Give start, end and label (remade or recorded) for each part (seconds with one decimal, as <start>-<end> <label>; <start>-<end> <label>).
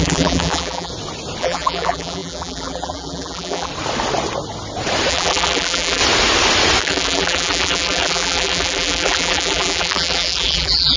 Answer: 0.0-0.9 remade; 0.9-1.4 recorded; 1.4-3.7 remade; 3.7-5.1 recorded; 5.1-6.0 remade; 6.0-6.8 recorded; 6.8-11.0 remade